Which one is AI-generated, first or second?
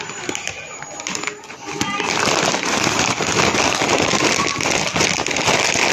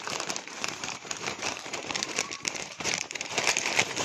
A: second